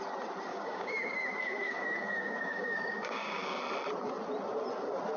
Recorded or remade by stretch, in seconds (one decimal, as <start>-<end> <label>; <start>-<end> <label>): 0.0-0.5 recorded; 0.5-3.6 remade; 3.6-5.2 recorded